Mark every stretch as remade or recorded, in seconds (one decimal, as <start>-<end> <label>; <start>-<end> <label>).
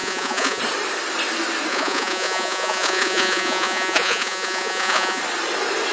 0.0-0.6 remade; 0.6-1.7 recorded; 1.7-5.2 remade; 5.2-5.9 recorded